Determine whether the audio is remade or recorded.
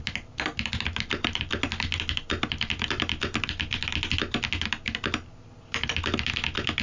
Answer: recorded